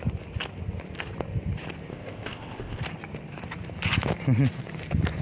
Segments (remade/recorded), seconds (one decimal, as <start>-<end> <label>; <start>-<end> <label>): 0.0-1.9 recorded; 1.9-2.8 remade; 2.8-5.2 recorded